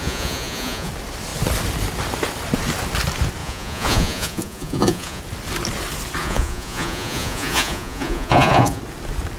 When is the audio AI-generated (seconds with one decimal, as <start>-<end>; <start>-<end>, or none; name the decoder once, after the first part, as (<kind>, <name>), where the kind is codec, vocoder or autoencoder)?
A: 0.0-0.9 (vocoder, Vocos); 3.4-5.2; 6.2-8.8